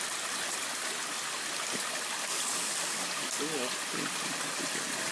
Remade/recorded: recorded